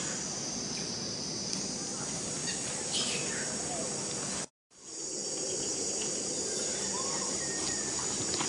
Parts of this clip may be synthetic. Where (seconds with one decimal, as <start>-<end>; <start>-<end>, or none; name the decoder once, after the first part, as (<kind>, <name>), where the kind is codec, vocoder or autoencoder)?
none

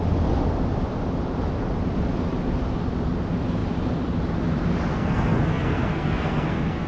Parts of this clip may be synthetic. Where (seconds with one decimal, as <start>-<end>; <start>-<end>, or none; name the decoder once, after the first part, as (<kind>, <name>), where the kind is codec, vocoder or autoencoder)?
4.9-6.9 (codec, SNAC)